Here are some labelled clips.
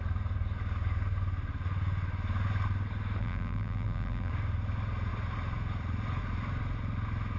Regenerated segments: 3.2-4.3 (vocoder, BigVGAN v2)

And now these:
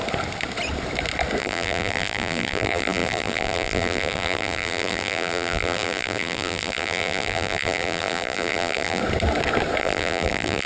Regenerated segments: 1.4-9.0 (vocoder, BigVGAN v2); 9.8-10.7

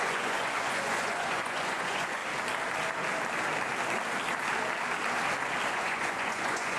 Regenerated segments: 0.0-2.2 (vocoder, Vocos); 5.7-6.8

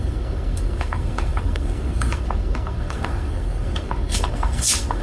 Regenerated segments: 0.0-5.0 (codec, SNAC)

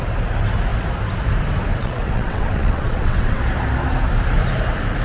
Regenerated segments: 1.8-3.4 (vocoder, WaveNeXt)

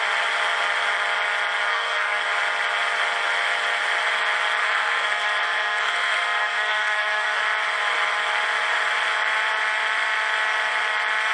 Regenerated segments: 1.7-2.2 (codec, SNAC); 4.6-7.4